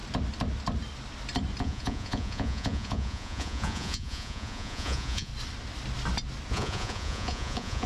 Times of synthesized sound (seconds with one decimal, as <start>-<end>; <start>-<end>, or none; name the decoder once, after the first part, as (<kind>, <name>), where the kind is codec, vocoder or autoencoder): 1.6-5.3 (vocoder, Vocos); 6.5-7.9